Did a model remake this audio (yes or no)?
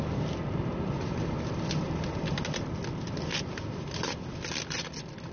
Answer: no